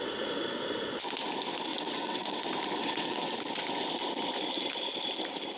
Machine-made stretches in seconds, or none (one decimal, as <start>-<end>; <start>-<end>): 1.7-2.4; 2.8-3.3